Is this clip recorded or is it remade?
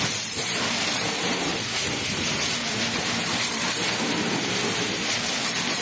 remade